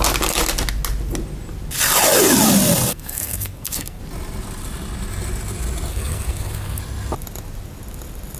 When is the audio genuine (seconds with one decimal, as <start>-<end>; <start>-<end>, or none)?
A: 0.0-2.9; 4.0-5.9; 6.8-8.4